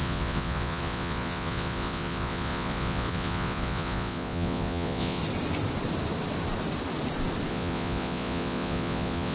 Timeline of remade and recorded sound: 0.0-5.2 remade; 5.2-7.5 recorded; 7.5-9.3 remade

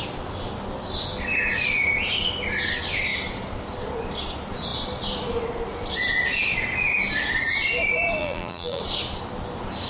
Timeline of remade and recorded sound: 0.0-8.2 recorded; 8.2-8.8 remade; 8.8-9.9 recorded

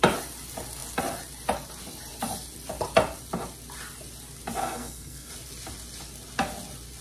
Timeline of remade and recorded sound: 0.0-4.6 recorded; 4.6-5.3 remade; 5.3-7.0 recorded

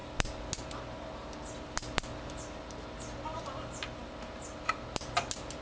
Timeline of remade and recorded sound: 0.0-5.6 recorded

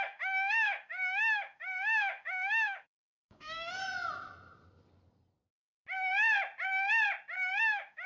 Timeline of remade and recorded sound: 0.0-3.8 remade; 3.8-7.6 recorded; 7.6-8.1 remade

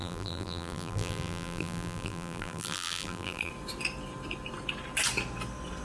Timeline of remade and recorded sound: 0.0-3.5 remade; 3.5-5.8 recorded

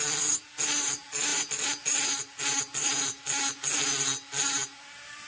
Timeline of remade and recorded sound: 0.0-5.3 recorded